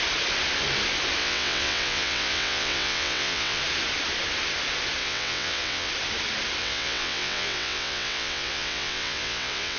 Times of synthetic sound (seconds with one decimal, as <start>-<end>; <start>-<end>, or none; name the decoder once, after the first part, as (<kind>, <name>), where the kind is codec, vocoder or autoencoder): 1.2-3.6 (vocoder, WaveNeXt); 5.0-5.9; 6.6-9.8